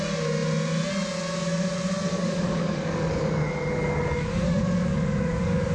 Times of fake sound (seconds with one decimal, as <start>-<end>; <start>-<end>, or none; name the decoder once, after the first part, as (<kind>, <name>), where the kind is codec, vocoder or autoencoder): 2.1-5.7 (codec, DAC)